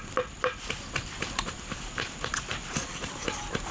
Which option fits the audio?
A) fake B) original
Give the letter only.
B